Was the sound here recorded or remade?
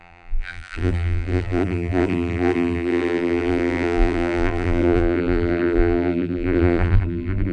remade